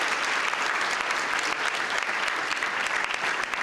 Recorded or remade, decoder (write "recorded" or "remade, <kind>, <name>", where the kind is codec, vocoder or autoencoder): recorded